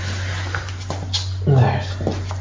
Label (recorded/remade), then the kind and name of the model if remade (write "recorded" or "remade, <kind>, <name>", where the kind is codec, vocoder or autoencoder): recorded